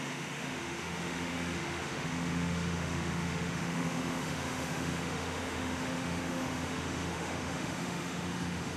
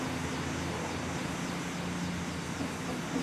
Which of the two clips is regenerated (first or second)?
first